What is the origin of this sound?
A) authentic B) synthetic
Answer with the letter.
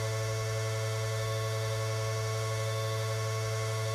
B